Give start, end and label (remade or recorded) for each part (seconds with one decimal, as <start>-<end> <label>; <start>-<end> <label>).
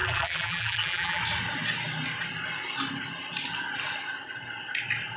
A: 0.0-1.2 remade; 1.2-5.2 recorded